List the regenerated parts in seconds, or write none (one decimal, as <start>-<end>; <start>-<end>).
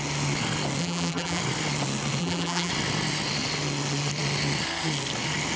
0.8-1.4; 2.2-2.7